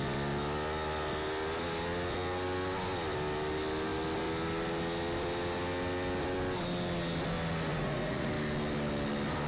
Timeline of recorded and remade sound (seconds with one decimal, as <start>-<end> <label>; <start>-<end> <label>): 0.0-7.7 recorded; 7.7-8.3 remade; 8.3-9.5 recorded